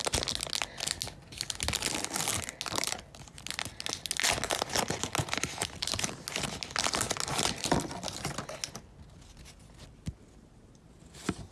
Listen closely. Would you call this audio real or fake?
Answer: real